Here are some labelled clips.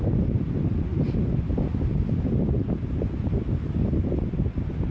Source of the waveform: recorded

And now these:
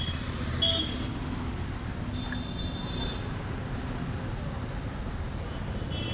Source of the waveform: recorded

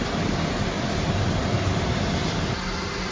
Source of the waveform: recorded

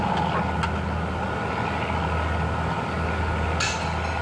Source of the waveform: recorded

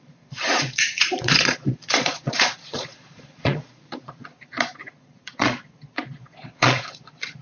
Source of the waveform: remade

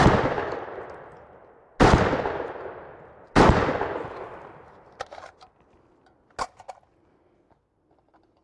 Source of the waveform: recorded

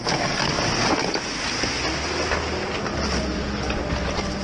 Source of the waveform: recorded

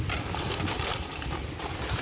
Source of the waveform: remade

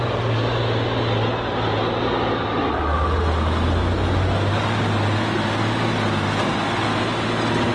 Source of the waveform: recorded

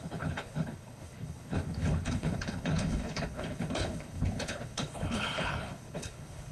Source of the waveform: remade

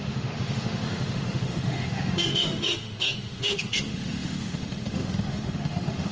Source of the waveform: remade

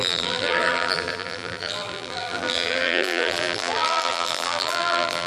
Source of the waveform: remade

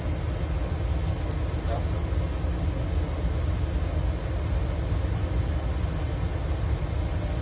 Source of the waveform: recorded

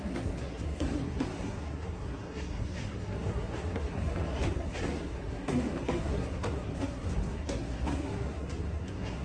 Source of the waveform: remade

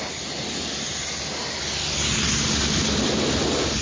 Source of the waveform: recorded